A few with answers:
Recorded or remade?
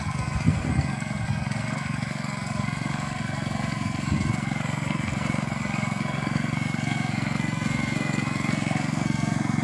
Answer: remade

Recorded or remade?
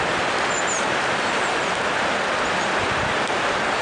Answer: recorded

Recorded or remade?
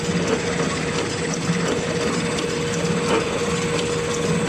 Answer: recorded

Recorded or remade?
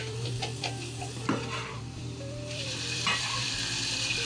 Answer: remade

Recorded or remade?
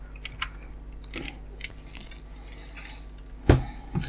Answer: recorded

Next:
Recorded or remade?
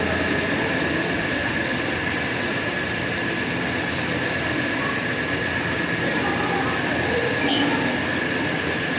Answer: recorded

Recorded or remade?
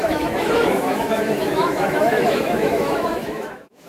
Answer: remade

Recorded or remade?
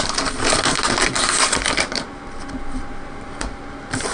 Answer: recorded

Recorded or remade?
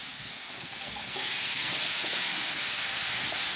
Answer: remade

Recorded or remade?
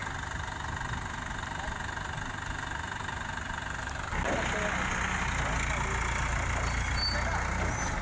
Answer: recorded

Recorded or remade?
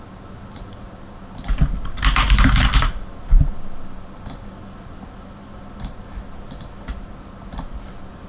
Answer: recorded